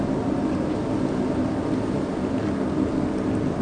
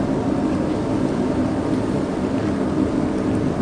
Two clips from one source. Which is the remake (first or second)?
second